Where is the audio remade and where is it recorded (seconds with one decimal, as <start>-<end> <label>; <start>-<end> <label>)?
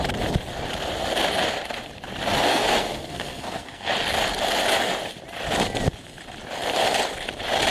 0.0-2.5 recorded; 2.5-3.9 remade; 3.9-7.7 recorded